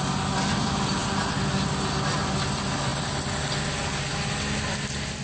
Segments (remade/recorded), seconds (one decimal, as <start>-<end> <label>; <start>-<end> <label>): 0.0-5.2 recorded